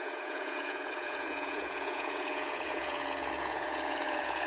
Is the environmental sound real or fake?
fake